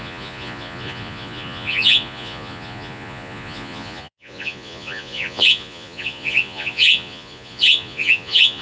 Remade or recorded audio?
remade